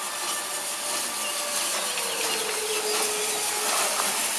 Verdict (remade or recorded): recorded